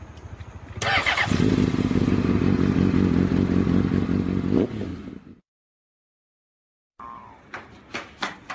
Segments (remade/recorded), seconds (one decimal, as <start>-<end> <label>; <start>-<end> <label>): 0.0-4.9 recorded; 4.9-5.7 remade; 5.7-8.5 recorded